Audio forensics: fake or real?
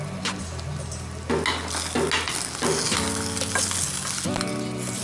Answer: real